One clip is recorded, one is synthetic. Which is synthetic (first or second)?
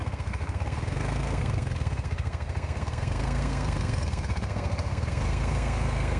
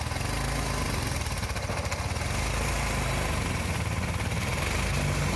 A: first